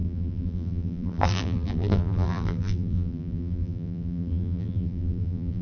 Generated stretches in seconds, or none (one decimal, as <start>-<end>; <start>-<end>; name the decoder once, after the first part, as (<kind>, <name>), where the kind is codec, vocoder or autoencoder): 0.0-5.6 (vocoder, BigVGAN v2)

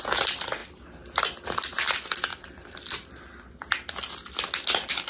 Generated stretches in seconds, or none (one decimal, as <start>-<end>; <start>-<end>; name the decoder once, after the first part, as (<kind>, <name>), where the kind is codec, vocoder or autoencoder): none

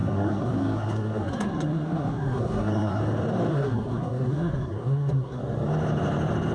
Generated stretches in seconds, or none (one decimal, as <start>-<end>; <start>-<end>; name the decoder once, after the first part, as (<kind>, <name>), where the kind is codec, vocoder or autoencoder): 0.0-3.0 (codec, SNAC); 3.5-5.4

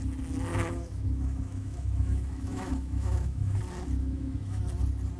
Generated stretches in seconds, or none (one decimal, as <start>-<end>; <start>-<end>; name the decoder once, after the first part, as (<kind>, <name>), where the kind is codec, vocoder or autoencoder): 0.5-3.6 (autoencoder, DAC-VAE); 4.0-4.6

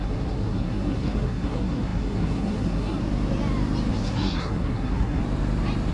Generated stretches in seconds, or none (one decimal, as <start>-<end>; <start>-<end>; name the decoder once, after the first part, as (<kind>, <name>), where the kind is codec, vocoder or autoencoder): 0.0-3.0 (codec, SNAC); 3.9-5.2

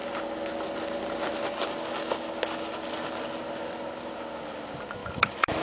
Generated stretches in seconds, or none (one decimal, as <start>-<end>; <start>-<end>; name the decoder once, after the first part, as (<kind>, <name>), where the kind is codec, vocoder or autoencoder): 5.0-5.6 (autoencoder, DAC-VAE)

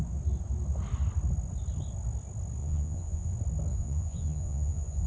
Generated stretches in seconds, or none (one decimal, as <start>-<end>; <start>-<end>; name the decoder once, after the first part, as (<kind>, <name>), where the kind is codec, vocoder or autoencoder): 2.6-3.3 (vocoder, Vocos); 3.7-5.1

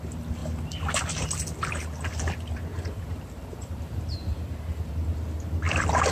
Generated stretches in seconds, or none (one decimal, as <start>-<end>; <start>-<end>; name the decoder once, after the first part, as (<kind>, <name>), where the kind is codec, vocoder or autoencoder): 2.7-4.9 (vocoder, BigVGAN v2)